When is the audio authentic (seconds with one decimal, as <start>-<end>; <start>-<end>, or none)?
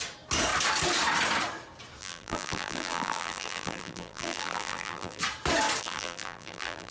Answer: 0.0-2.0; 5.2-5.8